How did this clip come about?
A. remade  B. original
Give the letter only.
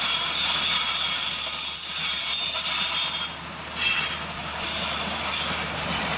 B